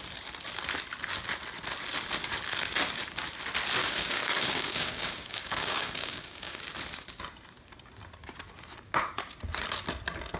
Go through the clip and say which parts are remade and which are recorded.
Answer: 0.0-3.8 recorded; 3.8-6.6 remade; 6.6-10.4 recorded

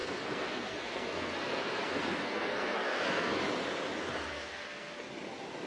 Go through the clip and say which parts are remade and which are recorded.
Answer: 0.0-3.4 remade; 3.4-4.3 recorded; 4.3-4.9 remade; 4.9-5.7 recorded

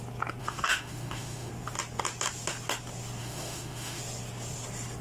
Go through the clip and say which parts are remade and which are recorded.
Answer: 0.0-0.4 recorded; 0.4-1.5 remade; 1.5-3.2 recorded; 3.2-4.0 remade; 4.0-5.0 recorded